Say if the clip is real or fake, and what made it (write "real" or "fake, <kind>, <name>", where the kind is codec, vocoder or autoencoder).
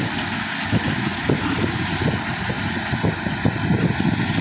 real